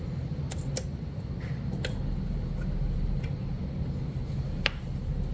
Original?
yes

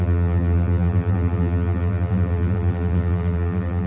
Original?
no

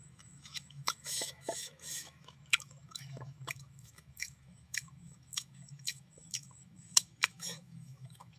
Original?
no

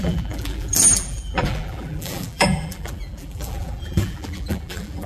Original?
no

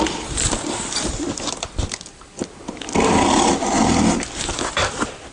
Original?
yes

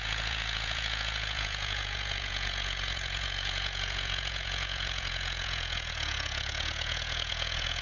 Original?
no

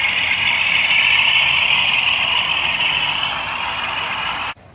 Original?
yes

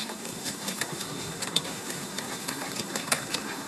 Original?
no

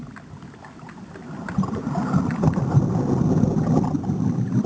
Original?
yes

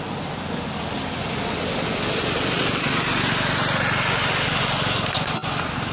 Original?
yes